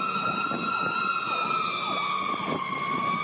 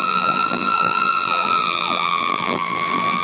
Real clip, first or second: first